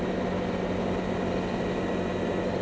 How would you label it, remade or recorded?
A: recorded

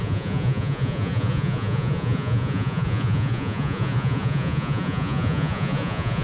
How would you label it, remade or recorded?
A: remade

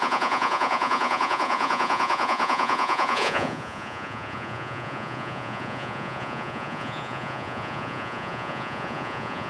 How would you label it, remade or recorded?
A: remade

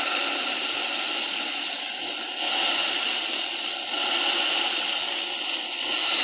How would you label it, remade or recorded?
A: recorded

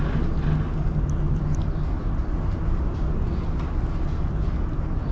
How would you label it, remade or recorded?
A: recorded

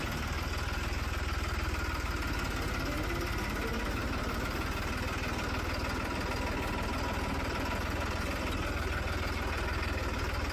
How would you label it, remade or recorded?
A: recorded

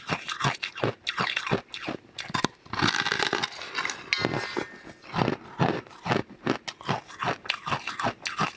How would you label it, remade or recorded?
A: recorded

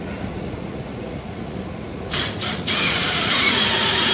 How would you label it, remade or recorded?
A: remade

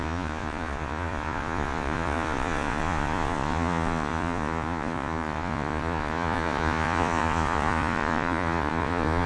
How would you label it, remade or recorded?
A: remade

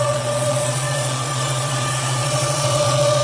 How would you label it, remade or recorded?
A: remade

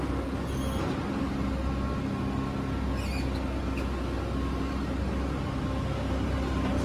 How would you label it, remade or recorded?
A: recorded